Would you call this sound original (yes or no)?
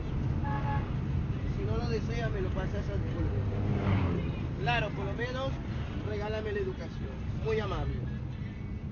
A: yes